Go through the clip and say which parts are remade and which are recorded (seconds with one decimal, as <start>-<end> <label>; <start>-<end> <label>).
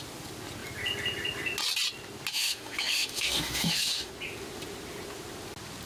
0.0-2.3 recorded; 2.3-4.1 remade; 4.1-5.9 recorded